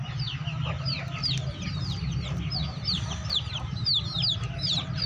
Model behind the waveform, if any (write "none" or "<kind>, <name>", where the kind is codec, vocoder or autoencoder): none